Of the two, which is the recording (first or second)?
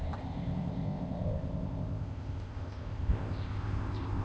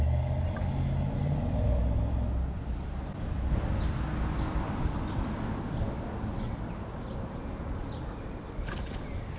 second